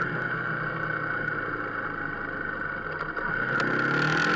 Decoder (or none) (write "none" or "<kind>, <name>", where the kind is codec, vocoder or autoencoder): none